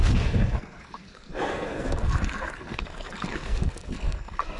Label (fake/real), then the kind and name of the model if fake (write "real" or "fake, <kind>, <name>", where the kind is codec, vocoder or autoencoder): fake, codec, SNAC